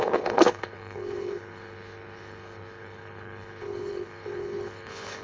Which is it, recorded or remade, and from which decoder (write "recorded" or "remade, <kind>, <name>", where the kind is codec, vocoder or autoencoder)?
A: remade, codec, HILCodec